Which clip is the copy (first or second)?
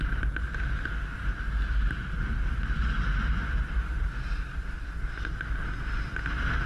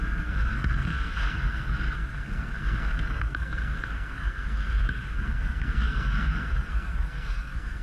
second